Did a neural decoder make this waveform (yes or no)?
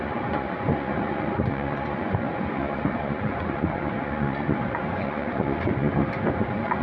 yes